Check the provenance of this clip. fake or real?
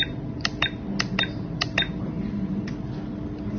real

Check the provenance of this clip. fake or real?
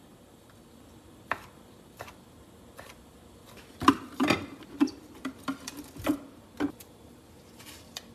fake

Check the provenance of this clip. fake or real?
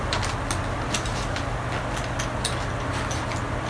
real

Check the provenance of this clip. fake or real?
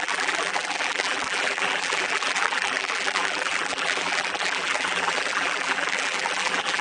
fake